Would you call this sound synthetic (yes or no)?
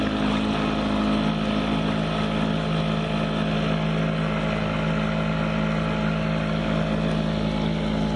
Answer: no